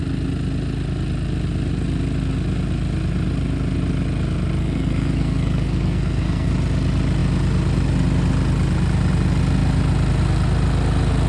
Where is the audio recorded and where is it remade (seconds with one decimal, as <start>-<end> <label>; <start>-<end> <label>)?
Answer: 0.0-4.6 recorded; 4.6-6.5 remade; 6.5-11.3 recorded